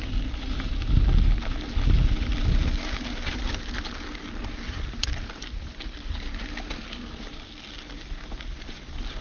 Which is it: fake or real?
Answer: real